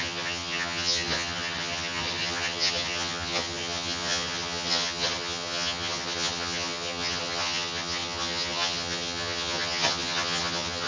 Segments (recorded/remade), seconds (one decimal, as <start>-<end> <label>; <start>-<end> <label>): 0.0-10.9 remade